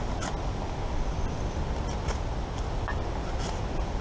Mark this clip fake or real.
real